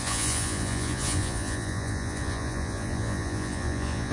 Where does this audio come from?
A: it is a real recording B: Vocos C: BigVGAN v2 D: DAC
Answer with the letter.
B